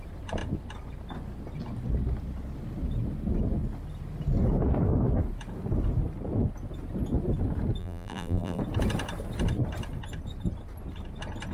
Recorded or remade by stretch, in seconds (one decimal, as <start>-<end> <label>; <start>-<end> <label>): 0.0-7.8 recorded; 7.8-8.6 remade; 8.6-11.5 recorded